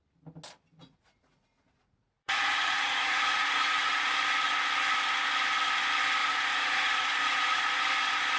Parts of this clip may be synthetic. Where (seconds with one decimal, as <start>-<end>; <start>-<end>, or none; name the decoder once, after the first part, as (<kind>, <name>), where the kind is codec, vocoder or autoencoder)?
0.8-4.1 (vocoder, Vocos); 6.2-7.8